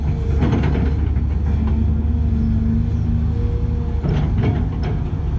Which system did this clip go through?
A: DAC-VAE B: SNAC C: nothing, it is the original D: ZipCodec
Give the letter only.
C